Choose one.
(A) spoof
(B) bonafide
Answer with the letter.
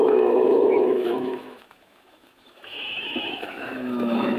A